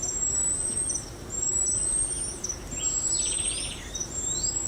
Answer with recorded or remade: remade